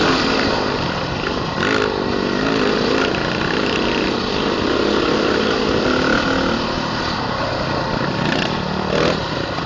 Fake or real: real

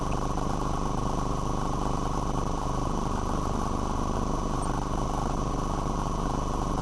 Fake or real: real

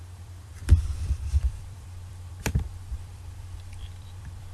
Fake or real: fake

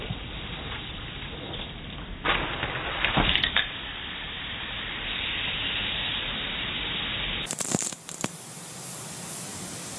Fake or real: fake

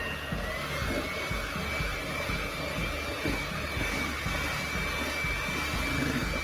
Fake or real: real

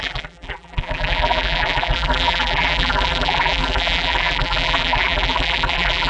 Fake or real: fake